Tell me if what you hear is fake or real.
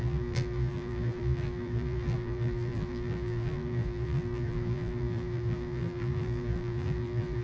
fake